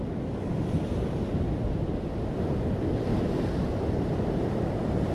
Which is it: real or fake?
real